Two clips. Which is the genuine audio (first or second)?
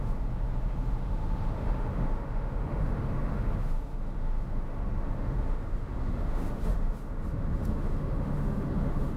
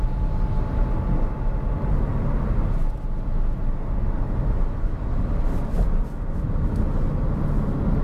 second